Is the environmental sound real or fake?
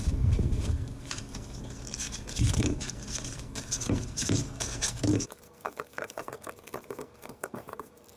fake